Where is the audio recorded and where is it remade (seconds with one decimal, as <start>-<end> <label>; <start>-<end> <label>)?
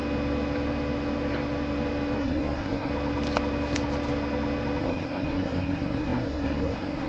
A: 0.0-2.2 recorded; 2.2-2.9 remade; 2.9-4.8 recorded; 4.8-7.1 remade